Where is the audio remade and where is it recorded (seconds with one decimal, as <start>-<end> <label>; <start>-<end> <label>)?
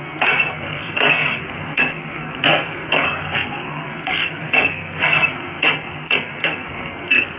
0.0-7.4 remade